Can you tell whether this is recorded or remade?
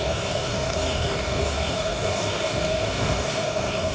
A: remade